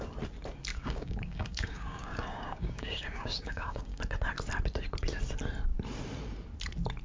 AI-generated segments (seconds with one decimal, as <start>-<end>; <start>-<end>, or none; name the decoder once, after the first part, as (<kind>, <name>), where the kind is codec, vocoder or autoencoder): 0.7-4.0 (codec, DAC)